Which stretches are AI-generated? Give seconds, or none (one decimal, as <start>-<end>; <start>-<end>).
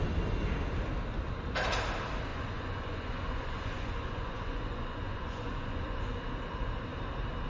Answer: 2.3-6.0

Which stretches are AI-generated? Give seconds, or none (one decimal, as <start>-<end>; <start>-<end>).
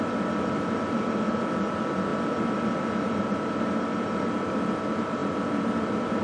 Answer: 0.0-2.1; 4.3-6.2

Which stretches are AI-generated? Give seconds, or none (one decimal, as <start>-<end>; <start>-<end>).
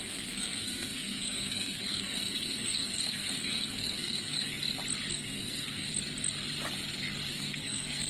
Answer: 0.0-4.5; 5.1-5.9; 7.3-8.1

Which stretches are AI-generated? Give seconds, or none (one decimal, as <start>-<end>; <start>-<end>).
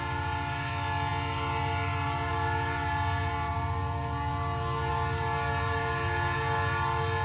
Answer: none